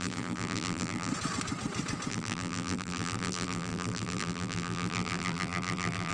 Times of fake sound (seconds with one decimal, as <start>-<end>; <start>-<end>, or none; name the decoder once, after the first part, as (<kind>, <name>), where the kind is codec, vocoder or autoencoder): 0.0-1.1 (vocoder, BigVGAN v2); 2.1-6.1